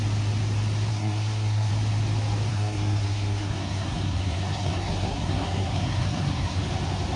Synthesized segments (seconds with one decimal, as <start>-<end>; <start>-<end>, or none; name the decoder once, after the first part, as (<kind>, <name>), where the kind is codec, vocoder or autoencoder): 0.9-1.7 (codec, SNAC); 2.5-6.6